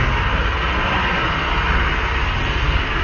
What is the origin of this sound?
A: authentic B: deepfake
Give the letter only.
A